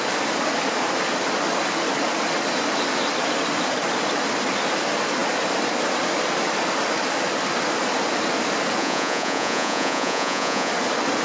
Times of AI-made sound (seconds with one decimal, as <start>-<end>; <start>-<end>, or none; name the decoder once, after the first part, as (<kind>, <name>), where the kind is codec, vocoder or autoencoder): 8.8-10.7 (vocoder, Vocos)